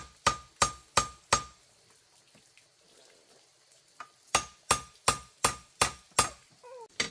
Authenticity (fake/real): real